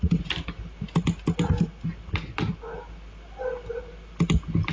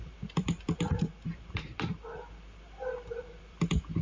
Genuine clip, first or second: first